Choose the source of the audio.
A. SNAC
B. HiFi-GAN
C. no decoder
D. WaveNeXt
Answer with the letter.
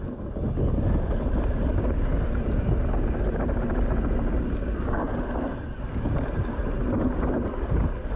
C